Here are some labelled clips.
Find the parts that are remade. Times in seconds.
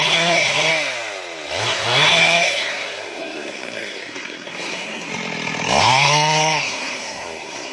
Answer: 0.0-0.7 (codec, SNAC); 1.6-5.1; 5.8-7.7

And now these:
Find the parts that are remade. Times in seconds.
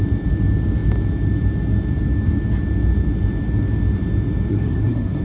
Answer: 4.5-5.2 (codec, SNAC)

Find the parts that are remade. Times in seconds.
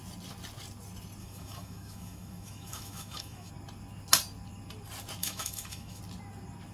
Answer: 1.2-3.5 (autoencoder, DAC-VAE); 5.2-6.0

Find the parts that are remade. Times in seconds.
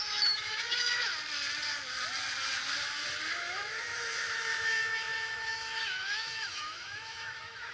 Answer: 0.0-1.1 (autoencoder, DAC-VAE); 3.4-7.7